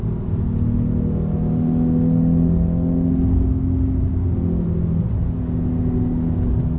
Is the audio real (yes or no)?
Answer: yes